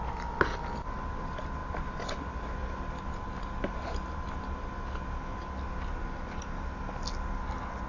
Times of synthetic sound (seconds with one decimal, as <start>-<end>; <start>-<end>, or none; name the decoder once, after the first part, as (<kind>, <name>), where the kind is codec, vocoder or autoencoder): none